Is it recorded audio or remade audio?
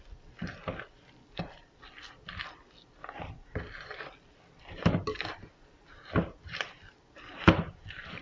recorded